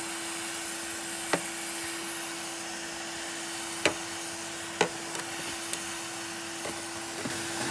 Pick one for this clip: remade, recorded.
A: recorded